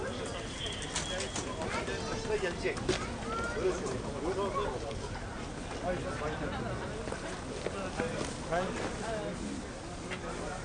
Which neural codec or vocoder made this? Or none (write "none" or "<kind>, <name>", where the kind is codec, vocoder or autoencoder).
none